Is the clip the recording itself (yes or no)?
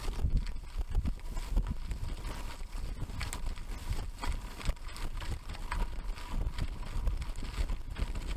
yes